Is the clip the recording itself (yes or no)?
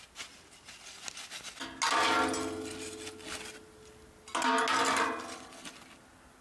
yes